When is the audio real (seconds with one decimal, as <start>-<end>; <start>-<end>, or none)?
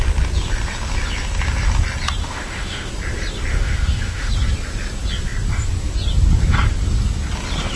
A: 0.0-2.2; 2.9-3.5; 4.3-7.8